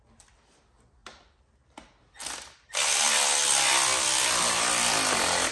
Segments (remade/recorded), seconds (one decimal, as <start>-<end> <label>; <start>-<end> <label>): 0.0-5.5 recorded